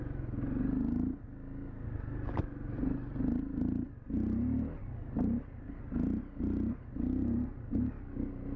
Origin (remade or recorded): recorded